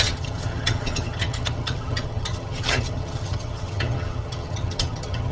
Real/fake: fake